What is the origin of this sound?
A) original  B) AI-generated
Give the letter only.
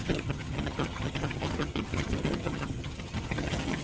B